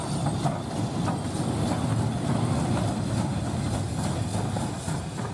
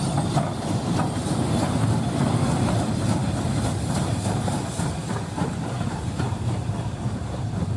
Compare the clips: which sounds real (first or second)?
first